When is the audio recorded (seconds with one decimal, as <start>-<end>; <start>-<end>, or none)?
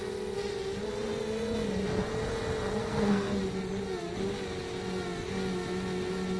0.0-2.8; 3.4-6.4